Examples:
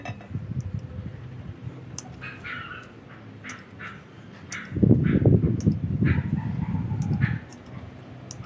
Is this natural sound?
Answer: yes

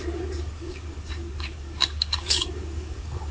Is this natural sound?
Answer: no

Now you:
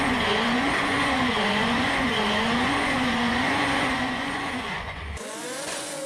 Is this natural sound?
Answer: no